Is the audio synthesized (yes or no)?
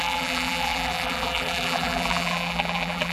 yes